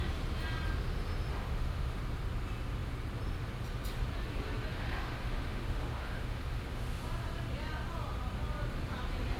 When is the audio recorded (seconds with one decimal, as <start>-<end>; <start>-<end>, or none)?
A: 0.0-1.3; 2.0-4.7; 7.0-9.4